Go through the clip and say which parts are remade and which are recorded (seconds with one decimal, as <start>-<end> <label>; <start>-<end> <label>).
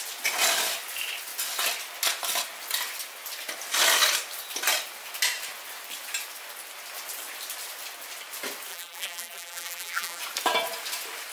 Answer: 0.0-8.7 recorded; 8.7-10.2 remade; 10.2-11.3 recorded